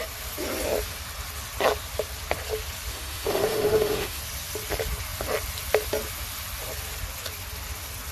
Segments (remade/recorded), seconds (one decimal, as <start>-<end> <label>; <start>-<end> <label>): 0.0-2.9 recorded; 2.9-4.2 remade; 4.2-8.1 recorded